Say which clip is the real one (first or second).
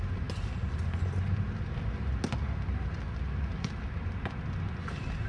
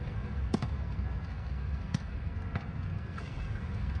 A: first